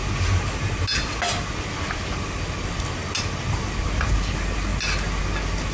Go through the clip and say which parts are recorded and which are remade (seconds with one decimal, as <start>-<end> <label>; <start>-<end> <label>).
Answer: 0.0-5.7 recorded